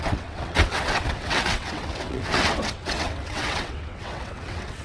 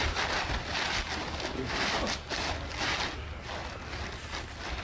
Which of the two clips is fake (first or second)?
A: first